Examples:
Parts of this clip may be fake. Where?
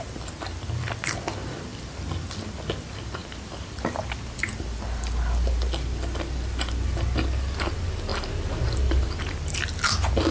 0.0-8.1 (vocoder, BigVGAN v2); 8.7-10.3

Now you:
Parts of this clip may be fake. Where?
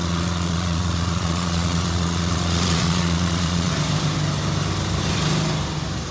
0.0-3.7 (vocoder, Vocos)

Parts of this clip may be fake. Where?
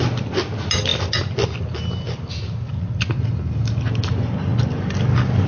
none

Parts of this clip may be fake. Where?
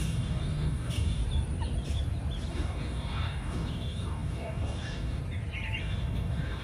0.0-1.2 (codec, DAC); 2.5-5.2; 5.8-6.6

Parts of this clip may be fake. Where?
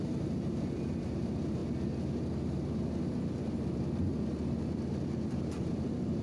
0.0-1.6 (vocoder, BigVGAN v2); 5.3-6.2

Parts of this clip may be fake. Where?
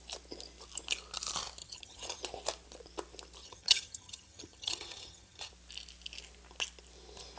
1.6-2.2 (vocoder, HiFi-GAN); 3.4-5.5